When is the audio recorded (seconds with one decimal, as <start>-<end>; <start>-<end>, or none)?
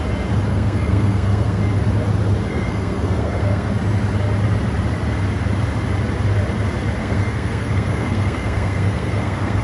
0.0-0.5; 1.6-2.5; 3.7-7.0